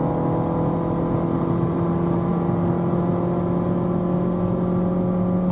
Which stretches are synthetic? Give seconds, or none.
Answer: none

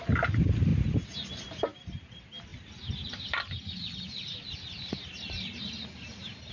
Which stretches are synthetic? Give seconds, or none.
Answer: none